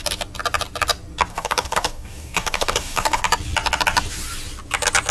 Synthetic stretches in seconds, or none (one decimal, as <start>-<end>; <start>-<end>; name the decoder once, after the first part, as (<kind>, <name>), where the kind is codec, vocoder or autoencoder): 1.3-3.2 (codec, DAC)